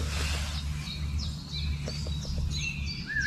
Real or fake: real